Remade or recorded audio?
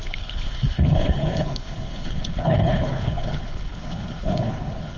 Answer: remade